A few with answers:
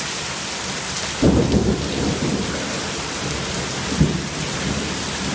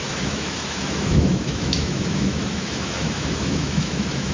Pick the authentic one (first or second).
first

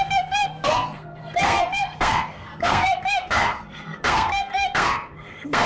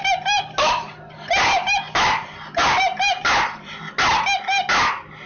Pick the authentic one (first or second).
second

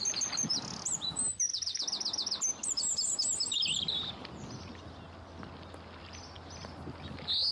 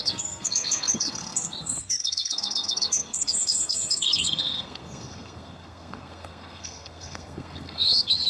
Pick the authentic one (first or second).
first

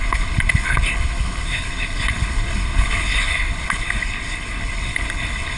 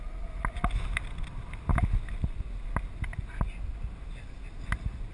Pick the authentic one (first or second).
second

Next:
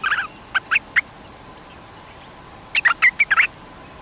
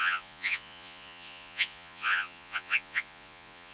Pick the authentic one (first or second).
first